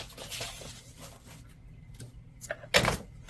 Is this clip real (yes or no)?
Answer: yes